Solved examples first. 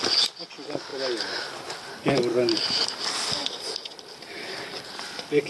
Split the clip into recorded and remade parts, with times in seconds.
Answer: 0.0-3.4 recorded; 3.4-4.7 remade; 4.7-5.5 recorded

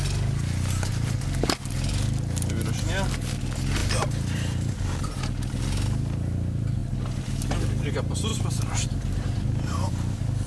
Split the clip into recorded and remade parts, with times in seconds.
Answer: 0.0-3.8 recorded; 3.8-5.2 remade; 5.2-8.3 recorded; 8.3-9.9 remade; 9.9-10.5 recorded

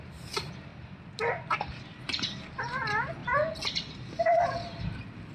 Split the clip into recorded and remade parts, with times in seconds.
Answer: 0.0-0.7 remade; 0.7-1.7 recorded; 1.7-3.2 remade; 3.2-4.1 recorded; 4.1-5.3 remade

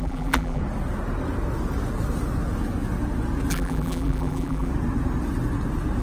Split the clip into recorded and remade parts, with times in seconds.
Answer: 0.0-0.6 remade; 0.6-3.5 recorded; 3.5-4.7 remade; 4.7-6.0 recorded

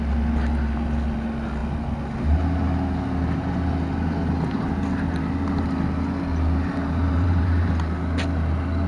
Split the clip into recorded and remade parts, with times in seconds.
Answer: 0.0-6.8 recorded; 6.8-7.7 remade; 7.7-8.9 recorded

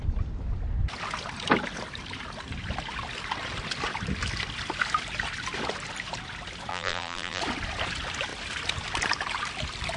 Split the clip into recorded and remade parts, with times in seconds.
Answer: 0.0-6.7 recorded; 6.7-7.4 remade; 7.4-10.0 recorded